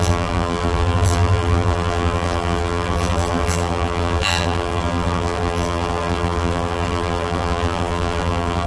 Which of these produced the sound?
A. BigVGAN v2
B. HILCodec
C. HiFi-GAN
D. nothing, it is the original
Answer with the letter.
A